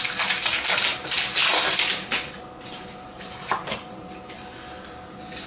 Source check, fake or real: real